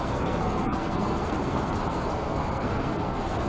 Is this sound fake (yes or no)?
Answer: yes